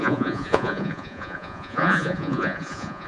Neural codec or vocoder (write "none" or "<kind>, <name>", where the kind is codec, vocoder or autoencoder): vocoder, Vocos